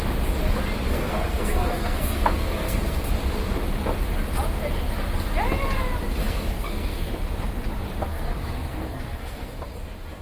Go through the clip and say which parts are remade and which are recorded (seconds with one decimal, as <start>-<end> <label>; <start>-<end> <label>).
0.0-0.9 recorded; 0.9-3.1 remade; 3.1-6.2 recorded; 6.2-7.1 remade; 7.1-8.0 recorded; 8.0-9.5 remade; 9.5-10.2 recorded